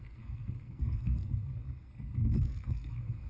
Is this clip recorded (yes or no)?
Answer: no